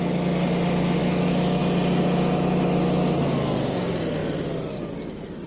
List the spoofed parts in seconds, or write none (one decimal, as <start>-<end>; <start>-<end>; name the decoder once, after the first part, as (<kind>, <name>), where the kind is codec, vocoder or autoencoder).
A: 1.0-1.6 (autoencoder, DAC-VAE)